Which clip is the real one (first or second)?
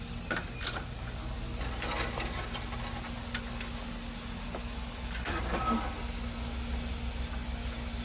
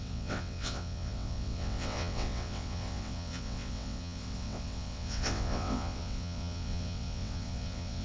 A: first